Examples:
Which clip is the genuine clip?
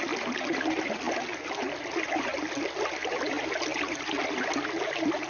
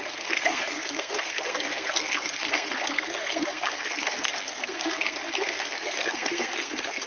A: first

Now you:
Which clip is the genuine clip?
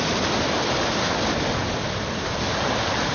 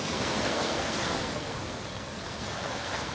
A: first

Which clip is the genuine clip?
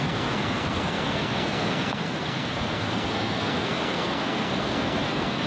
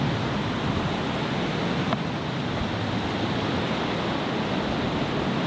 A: second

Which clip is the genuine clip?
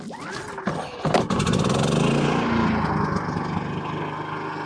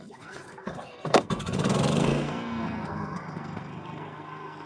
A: first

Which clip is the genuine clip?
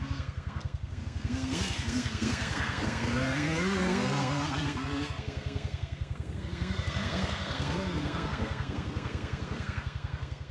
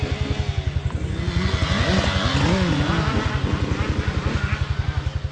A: second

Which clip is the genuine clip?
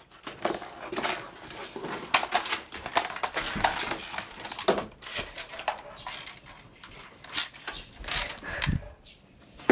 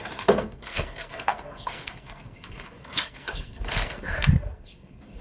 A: first